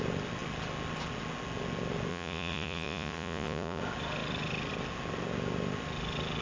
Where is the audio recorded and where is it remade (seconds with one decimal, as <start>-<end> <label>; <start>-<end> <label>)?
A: 0.0-2.1 recorded; 2.1-3.8 remade; 3.8-6.4 recorded